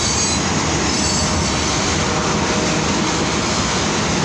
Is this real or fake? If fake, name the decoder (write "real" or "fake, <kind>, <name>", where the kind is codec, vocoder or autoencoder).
real